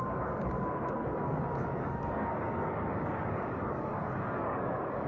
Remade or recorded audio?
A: remade